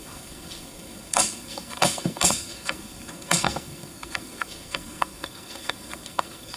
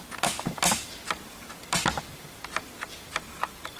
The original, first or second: second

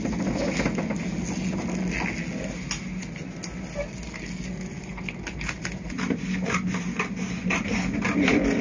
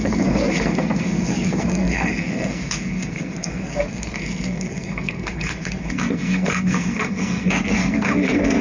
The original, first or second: first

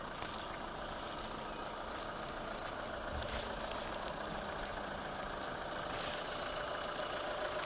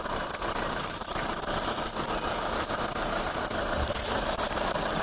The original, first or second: first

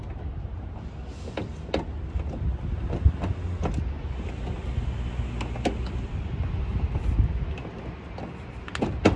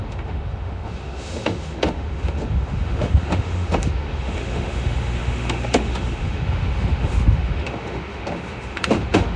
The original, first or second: first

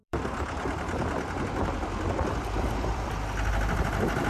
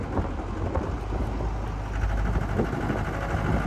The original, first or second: second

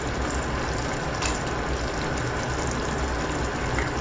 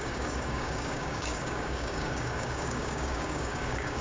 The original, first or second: first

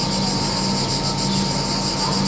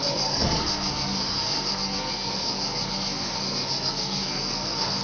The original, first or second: first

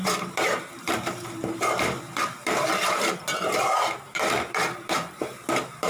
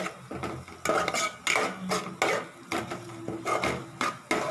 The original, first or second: second